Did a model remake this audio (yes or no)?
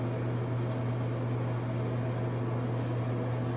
no